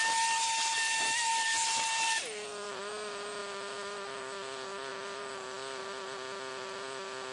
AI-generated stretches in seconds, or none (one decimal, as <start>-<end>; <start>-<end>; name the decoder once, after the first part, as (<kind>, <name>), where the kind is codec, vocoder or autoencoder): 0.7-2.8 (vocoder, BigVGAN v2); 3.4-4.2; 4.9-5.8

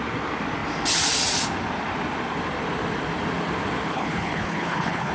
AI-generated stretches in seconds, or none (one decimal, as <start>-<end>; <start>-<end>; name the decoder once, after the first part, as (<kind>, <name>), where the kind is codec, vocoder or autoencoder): 3.9-5.1 (codec, HILCodec)

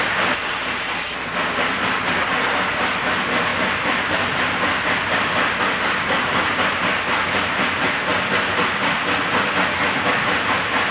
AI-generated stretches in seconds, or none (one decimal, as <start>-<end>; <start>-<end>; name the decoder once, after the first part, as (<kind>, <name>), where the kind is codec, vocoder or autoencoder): 0.4-1.1 (vocoder, BigVGAN v2); 3.5-5.6

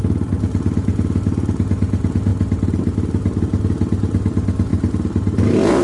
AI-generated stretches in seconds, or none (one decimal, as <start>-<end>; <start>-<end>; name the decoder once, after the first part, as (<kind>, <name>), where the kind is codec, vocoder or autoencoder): none

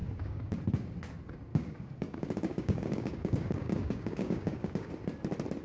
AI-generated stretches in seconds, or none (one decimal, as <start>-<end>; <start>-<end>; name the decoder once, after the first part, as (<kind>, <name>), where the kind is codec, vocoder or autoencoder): 0.0-0.6 (codec, DAC); 1.5-4.9

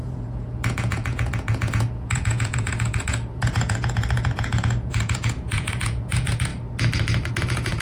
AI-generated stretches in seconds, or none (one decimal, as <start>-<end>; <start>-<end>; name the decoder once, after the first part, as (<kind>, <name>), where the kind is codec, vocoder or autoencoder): 0.0-6.5 (vocoder, Vocos); 7.3-7.8

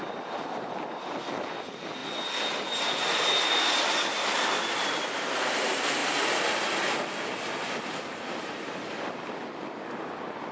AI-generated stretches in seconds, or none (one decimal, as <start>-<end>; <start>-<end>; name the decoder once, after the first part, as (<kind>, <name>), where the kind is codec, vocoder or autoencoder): none

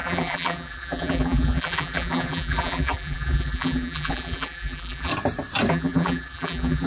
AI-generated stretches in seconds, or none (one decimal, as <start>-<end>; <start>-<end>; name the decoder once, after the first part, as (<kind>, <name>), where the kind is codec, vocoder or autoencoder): 0.0-5.1 (vocoder, BigVGAN v2); 5.7-6.9